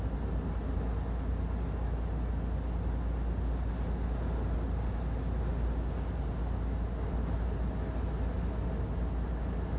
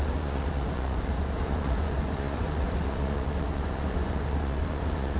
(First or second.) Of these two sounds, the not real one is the second